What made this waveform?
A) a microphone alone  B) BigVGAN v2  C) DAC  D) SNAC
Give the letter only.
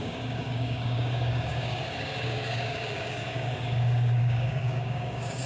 C